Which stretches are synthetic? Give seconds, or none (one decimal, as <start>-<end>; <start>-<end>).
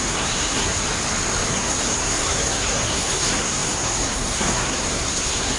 0.0-0.8; 1.5-5.6